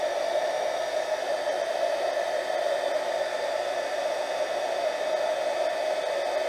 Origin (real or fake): real